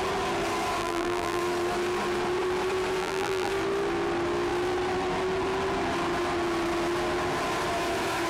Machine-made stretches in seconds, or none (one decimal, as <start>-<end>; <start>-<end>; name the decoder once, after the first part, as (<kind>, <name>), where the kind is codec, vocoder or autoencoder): 0.8-1.4 (vocoder, BigVGAN v2); 3.0-3.5